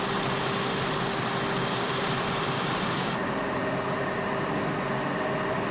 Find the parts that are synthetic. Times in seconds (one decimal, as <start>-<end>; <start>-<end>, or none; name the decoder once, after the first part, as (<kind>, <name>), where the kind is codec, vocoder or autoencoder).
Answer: 1.6-3.6 (vocoder, BigVGAN v2)